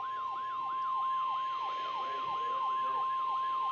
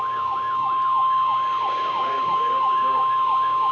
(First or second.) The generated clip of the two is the second